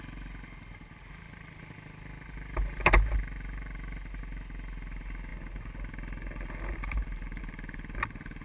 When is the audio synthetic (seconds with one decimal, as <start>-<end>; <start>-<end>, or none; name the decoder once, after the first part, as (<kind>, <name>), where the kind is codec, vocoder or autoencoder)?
none